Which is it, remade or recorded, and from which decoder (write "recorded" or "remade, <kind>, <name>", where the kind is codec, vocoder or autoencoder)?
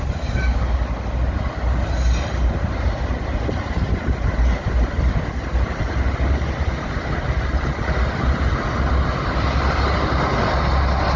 recorded